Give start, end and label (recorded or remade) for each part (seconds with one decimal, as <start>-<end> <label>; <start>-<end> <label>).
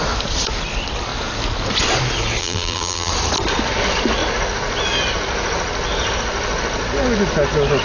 0.0-2.4 recorded; 2.4-3.1 remade; 3.1-7.8 recorded